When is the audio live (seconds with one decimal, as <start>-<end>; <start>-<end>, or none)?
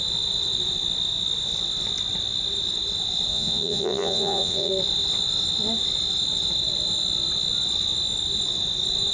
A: 0.0-3.3; 4.7-9.1